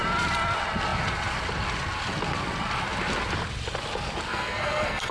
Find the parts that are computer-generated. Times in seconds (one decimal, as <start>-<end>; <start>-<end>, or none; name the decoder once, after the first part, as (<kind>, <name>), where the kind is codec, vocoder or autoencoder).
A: 4.3-5.1 (codec, SNAC)